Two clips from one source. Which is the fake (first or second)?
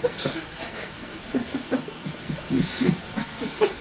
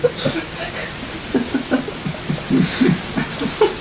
first